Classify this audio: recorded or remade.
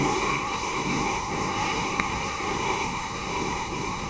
remade